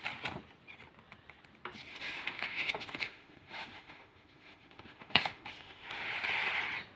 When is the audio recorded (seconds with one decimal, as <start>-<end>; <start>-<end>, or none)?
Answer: 0.0-1.9; 6.1-7.0